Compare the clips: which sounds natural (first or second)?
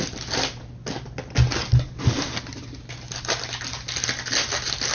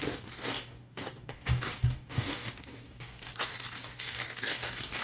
first